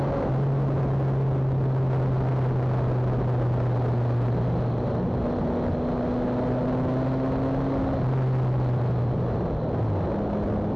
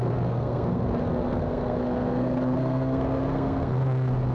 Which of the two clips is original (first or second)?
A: first